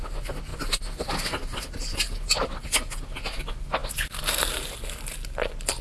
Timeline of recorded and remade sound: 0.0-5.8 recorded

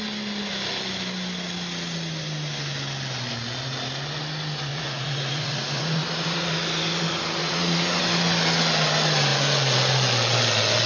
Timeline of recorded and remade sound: 0.0-4.7 recorded; 4.7-6.5 remade; 6.5-7.4 recorded; 7.4-8.0 remade; 8.0-10.9 recorded

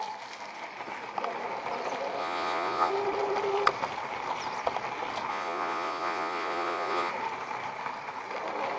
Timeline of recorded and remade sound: 0.0-2.2 recorded; 2.2-2.9 remade; 2.9-5.3 recorded; 5.3-7.1 remade; 7.1-8.8 recorded

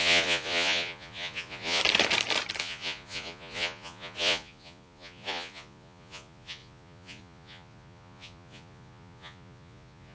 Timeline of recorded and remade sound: 0.0-1.8 remade; 1.8-2.6 recorded; 2.6-10.1 remade

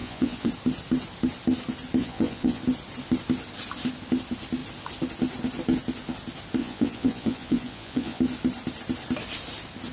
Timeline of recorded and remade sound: 0.0-0.5 remade; 0.5-2.0 recorded; 2.0-2.6 remade; 2.6-6.6 recorded; 6.6-8.2 remade; 8.2-9.9 recorded